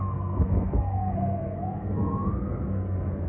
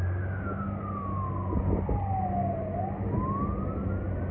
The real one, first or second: second